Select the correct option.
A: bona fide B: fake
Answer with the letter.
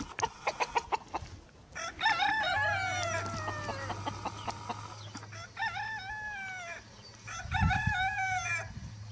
A